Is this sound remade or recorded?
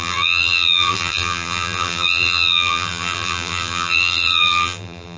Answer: remade